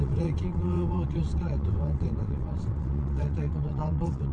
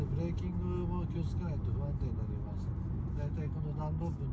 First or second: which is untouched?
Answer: second